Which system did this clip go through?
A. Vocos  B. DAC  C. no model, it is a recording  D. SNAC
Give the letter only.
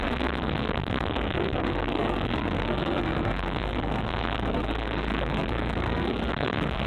D